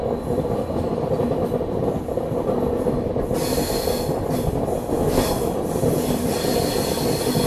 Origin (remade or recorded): recorded